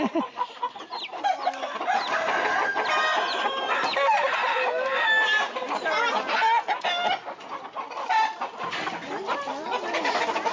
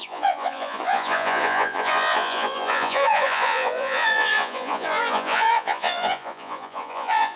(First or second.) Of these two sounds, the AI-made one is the second